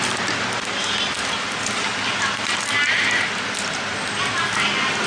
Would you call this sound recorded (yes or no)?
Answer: yes